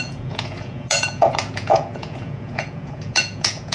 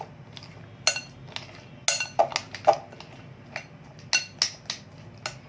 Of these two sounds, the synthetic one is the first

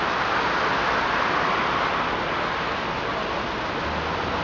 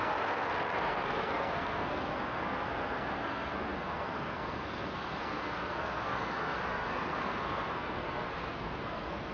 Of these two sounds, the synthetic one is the second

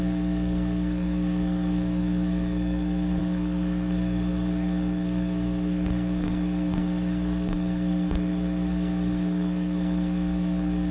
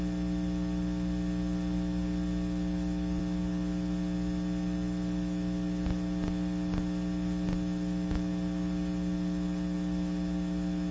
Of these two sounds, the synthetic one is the first